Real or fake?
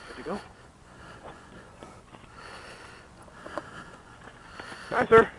fake